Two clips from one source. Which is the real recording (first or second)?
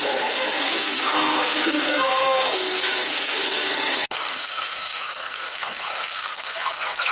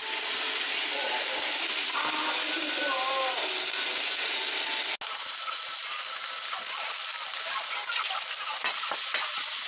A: second